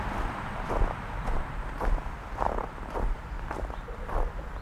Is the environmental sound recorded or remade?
recorded